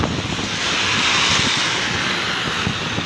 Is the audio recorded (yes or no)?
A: yes